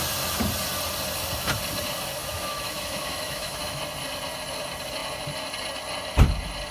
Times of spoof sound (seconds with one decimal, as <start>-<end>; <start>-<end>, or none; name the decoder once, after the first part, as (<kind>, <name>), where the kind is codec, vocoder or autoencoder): 2.2-3.8 (autoencoder, DAC-VAE)